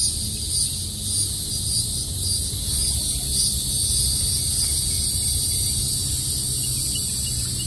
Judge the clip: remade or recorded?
recorded